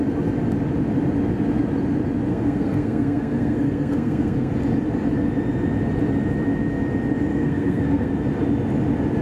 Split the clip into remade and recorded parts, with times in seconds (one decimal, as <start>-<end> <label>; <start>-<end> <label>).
0.0-2.3 recorded; 2.3-4.5 remade; 4.5-7.3 recorded; 7.3-8.1 remade; 8.1-9.2 recorded